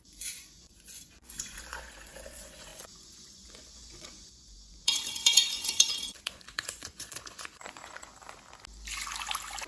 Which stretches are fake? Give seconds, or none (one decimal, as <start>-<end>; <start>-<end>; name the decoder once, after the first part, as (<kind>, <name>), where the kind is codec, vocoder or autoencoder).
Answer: 0.0-8.1 (vocoder, Vocos)